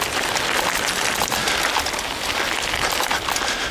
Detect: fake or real real